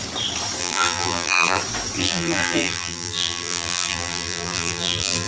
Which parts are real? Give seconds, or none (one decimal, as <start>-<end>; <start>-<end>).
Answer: 0.0-0.6; 1.6-2.0